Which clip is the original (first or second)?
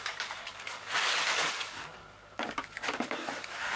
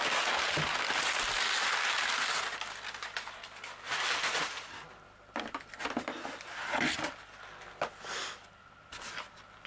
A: second